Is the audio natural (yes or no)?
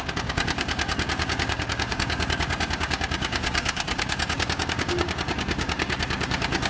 no